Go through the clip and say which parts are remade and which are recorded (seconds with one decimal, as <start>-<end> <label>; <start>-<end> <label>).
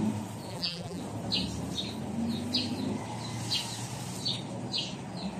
0.0-0.5 recorded; 0.5-1.0 remade; 1.0-5.4 recorded